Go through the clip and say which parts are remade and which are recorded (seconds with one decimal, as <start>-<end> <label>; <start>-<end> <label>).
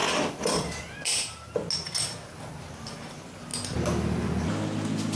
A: 0.0-5.2 recorded